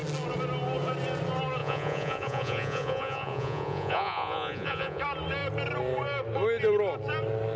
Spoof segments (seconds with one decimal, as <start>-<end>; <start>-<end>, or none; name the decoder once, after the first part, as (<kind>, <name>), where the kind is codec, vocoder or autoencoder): 1.6-5.0 (vocoder, Vocos)